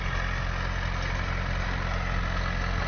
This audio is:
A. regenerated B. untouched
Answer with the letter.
B